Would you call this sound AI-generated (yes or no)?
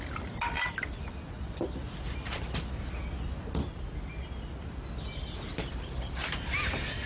no